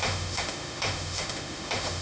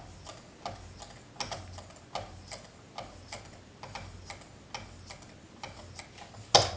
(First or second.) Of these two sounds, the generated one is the first